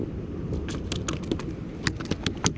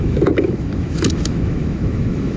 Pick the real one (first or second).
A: first